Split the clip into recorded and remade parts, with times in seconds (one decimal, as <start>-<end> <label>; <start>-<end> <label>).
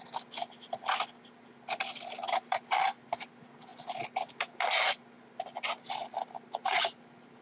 0.0-7.4 recorded